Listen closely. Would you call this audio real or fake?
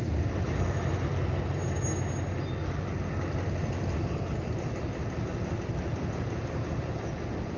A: real